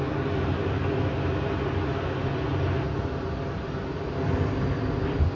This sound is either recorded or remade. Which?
recorded